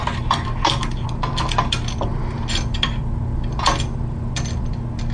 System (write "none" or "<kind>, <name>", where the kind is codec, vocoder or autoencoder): none